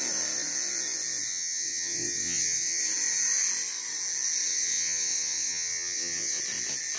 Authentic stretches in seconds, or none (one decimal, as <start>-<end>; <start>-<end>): 0.0-1.3; 2.8-4.5; 6.4-7.0